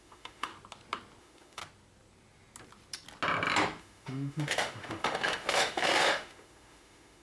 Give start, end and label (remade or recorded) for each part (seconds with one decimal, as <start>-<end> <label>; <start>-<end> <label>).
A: 0.0-0.5 remade; 0.5-1.2 recorded; 1.2-1.6 remade; 1.6-3.8 recorded; 3.8-7.2 remade